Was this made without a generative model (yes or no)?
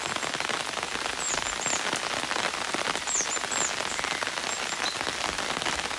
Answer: yes